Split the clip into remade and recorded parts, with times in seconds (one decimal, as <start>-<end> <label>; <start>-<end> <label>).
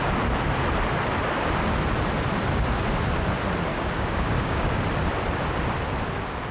0.0-3.7 recorded; 3.7-4.8 remade; 4.8-6.5 recorded